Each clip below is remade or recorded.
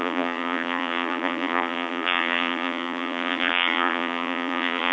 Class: remade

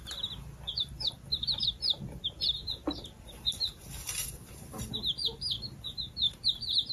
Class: remade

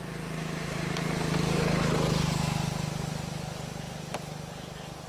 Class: recorded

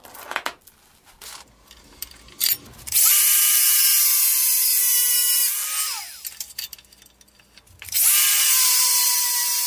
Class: recorded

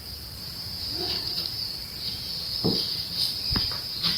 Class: remade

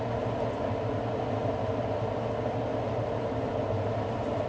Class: recorded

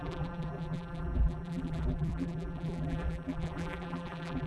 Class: remade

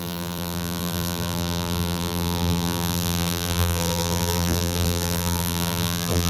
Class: remade